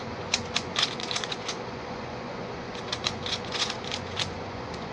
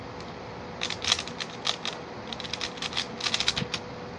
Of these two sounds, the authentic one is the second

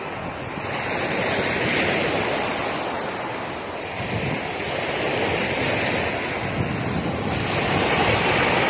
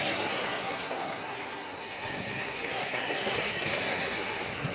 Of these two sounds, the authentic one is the first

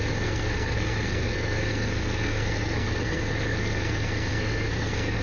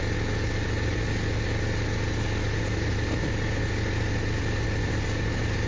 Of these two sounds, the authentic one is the second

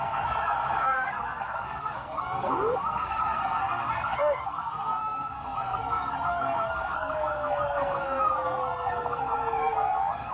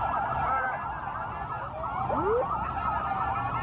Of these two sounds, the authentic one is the second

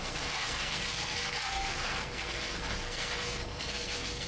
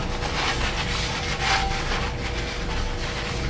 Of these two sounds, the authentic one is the second